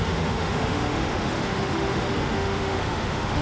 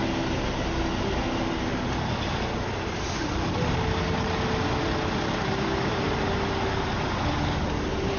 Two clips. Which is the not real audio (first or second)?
first